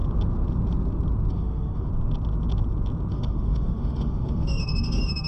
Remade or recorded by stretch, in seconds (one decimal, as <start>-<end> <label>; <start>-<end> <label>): 0.0-1.3 recorded; 1.3-1.9 remade; 1.9-3.1 recorded; 3.1-5.3 remade